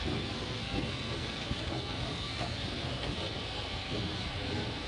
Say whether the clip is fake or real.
fake